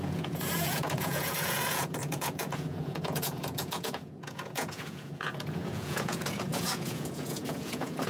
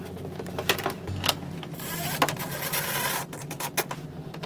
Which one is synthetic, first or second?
first